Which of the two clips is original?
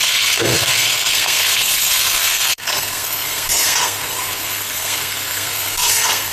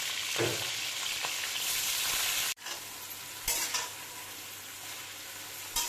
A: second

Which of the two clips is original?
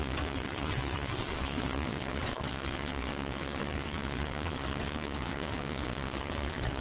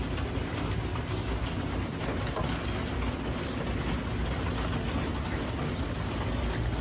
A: second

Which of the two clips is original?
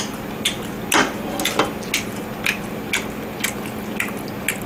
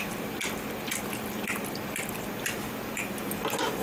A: first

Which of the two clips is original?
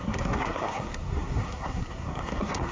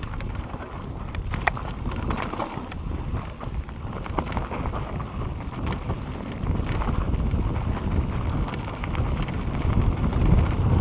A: second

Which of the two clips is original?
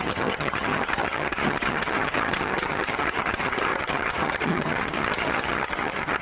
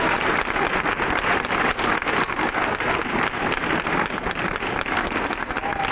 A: second